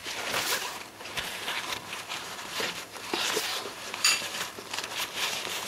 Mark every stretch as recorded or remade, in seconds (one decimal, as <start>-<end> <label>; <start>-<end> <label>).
0.0-1.0 recorded; 1.0-5.7 remade